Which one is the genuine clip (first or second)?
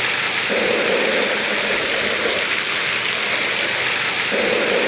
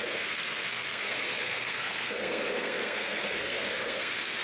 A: first